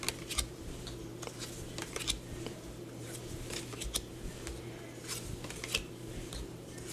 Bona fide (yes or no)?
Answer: yes